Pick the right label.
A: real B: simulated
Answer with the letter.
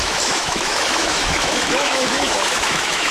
B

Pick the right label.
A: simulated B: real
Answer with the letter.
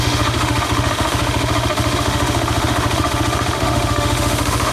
A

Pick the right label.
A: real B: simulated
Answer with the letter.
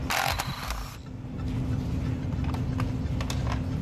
A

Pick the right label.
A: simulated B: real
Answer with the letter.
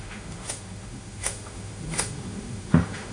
A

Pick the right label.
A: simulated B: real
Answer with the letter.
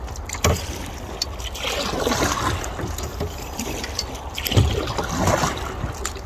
B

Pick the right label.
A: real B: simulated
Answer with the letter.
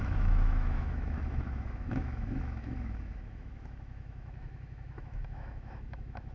B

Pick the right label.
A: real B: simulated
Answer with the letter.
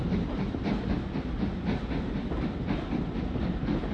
A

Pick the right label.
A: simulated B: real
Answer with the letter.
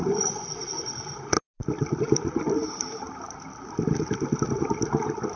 B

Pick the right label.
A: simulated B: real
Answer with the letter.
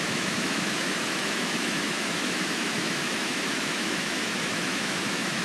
A